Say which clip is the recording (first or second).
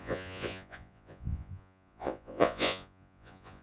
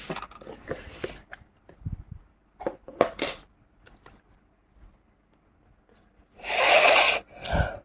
second